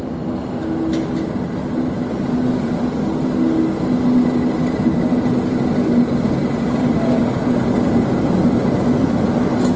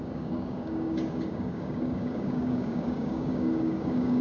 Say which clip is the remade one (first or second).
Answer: second